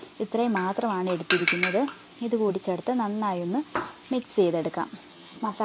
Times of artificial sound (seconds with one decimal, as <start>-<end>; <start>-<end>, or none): 5.1-5.6